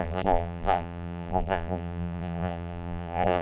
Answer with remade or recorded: remade